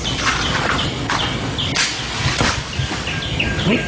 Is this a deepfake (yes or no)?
no